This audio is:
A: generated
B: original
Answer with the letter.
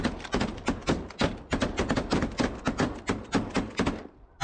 B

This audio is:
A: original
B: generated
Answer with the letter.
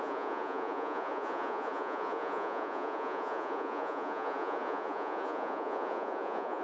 B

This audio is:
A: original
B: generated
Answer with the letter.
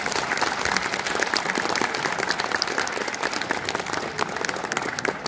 A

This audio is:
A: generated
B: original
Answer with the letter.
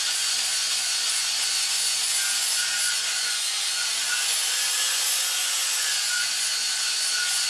A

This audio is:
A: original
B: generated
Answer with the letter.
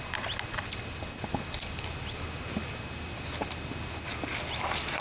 A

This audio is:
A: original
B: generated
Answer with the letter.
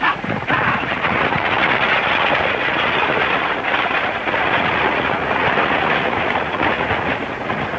B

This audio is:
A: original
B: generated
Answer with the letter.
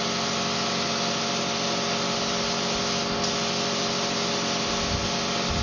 A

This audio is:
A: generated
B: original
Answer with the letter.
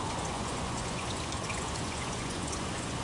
A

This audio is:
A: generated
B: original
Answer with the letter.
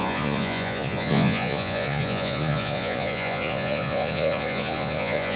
A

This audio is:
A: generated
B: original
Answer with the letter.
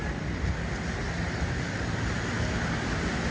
B